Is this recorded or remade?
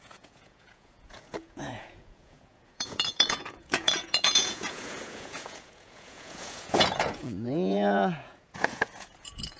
remade